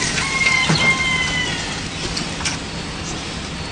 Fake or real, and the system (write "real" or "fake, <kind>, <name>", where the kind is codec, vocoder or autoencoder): real